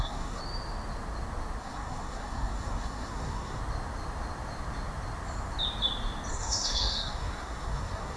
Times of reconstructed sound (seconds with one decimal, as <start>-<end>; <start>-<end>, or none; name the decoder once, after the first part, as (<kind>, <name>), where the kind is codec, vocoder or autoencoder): 0.0-0.4 (codec, SNAC); 1.6-3.6; 6.3-8.2